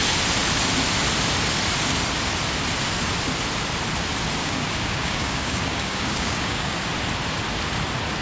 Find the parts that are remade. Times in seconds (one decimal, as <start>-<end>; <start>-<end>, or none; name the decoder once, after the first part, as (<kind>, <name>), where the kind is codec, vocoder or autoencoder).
4.4-6.8 (codec, DAC)